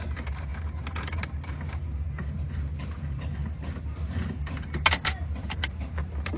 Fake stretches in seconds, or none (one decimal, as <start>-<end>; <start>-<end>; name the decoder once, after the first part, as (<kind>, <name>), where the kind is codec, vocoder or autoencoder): none